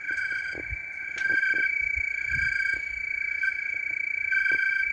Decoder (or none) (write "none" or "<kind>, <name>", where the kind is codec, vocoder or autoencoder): vocoder, BigVGAN v2